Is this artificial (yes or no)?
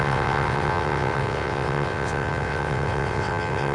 yes